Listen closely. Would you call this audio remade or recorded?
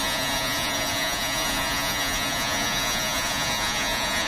remade